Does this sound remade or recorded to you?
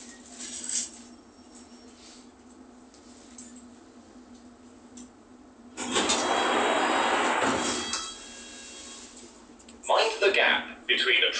recorded